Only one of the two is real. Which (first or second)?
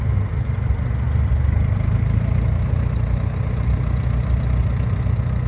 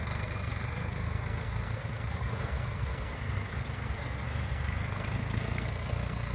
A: first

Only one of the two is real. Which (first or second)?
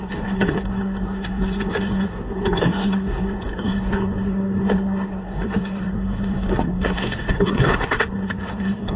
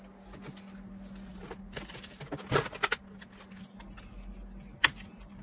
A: second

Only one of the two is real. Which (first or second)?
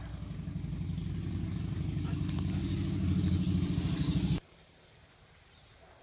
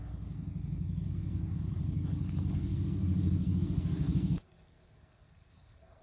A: first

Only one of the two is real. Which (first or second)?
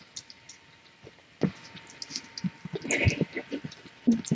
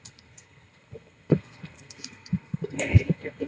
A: first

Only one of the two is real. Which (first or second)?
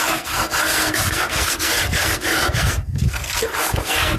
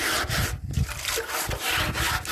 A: second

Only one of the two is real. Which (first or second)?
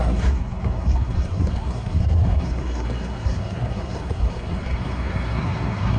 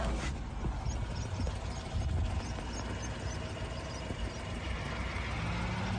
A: second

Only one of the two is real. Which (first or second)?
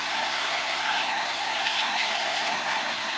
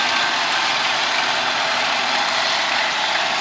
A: second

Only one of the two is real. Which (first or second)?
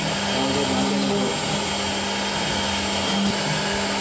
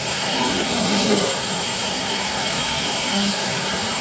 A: first